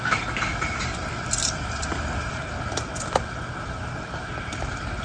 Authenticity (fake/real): real